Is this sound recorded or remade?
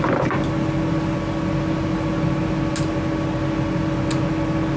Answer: recorded